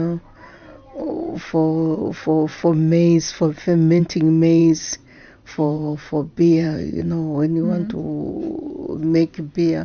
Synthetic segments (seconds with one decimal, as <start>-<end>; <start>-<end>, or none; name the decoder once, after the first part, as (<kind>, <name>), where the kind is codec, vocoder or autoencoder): 4.6-7.0 (vocoder, Vocos)